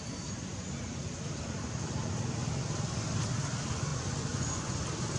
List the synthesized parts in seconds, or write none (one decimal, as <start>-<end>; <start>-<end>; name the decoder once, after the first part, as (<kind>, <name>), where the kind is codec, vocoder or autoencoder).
3.9-4.8 (vocoder, Vocos)